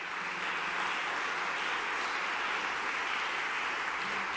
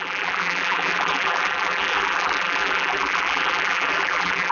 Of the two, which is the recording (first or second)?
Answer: first